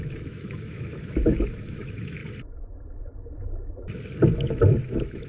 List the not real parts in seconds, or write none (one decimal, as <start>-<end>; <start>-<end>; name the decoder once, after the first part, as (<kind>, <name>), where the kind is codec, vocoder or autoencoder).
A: 0.0-2.2 (autoencoder, DAC-VAE); 4.8-5.3